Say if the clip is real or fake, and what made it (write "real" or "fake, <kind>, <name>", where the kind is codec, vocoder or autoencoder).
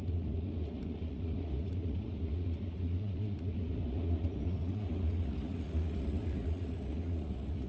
fake, vocoder, Vocos